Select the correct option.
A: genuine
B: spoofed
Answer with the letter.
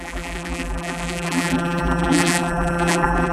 B